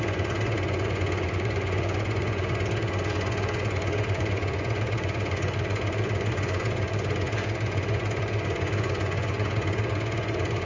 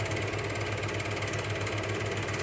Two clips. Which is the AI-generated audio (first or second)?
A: first